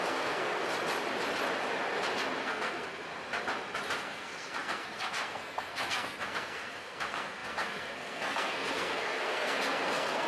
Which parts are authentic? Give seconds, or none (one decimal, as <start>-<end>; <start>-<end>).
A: 0.6-2.4; 3.1-4.0